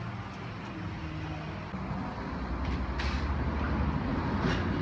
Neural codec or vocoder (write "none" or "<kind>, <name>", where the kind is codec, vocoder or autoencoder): none